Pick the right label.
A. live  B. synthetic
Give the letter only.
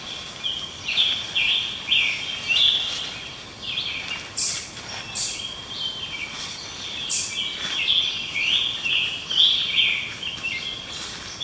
A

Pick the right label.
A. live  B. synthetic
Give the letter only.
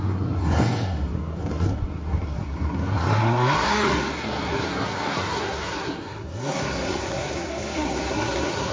B